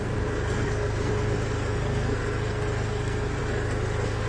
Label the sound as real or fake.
fake